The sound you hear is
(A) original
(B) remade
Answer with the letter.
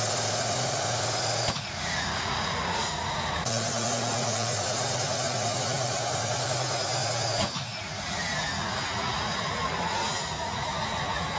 B